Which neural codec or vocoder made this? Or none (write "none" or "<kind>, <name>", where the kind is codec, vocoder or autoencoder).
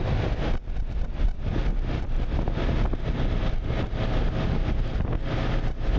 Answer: none